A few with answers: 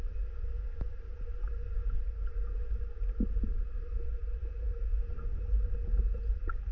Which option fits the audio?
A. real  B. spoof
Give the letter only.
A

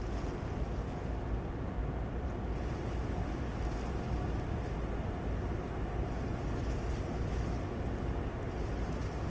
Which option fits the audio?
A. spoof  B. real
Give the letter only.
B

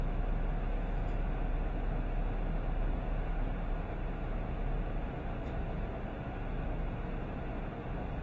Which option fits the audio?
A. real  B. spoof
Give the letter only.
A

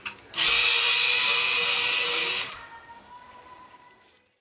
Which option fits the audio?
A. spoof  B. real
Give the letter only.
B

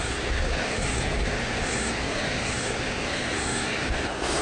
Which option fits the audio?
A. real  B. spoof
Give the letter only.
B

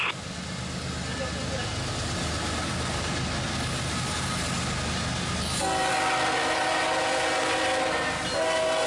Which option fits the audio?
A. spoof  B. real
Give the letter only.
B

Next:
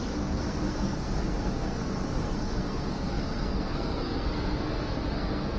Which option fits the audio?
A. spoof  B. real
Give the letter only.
A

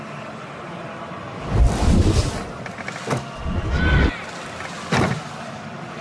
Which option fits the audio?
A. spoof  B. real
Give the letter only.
B